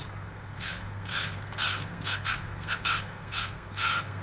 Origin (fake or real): fake